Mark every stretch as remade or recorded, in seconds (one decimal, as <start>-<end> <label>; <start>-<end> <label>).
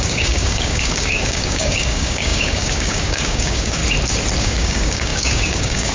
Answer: 0.0-3.8 remade; 3.8-4.4 recorded; 4.4-5.9 remade